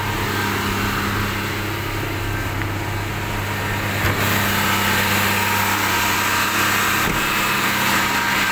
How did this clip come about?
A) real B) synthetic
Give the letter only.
A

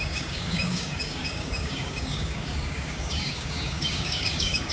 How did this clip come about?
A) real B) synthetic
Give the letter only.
B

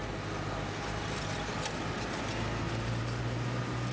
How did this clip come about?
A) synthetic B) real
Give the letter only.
B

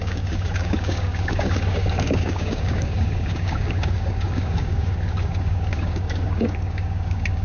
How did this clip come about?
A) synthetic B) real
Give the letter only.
A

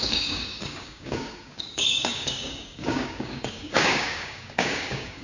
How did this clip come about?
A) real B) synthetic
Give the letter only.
B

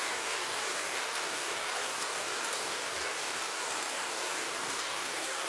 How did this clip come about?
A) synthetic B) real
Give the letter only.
A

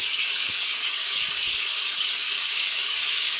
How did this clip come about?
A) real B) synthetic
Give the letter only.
B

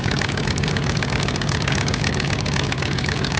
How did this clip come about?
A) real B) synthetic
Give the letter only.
B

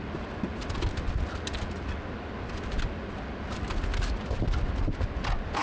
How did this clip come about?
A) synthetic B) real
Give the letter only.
B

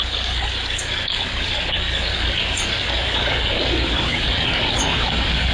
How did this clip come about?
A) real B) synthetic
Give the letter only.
B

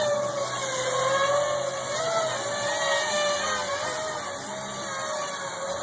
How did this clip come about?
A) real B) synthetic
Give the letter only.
A